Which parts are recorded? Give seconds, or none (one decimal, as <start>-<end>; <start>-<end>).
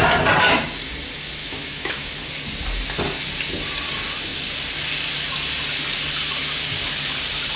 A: 0.0-1.4; 2.1-7.6